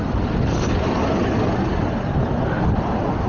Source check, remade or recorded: recorded